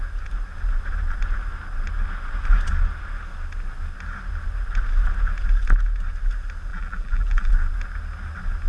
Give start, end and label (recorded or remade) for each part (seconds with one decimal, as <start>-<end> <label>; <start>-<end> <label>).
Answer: 0.0-6.7 recorded; 6.7-7.5 remade; 7.5-8.7 recorded